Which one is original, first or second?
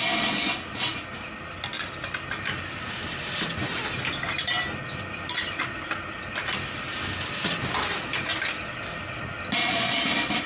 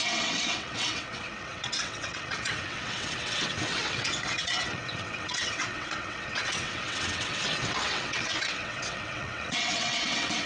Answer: first